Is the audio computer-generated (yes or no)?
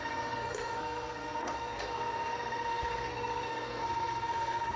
yes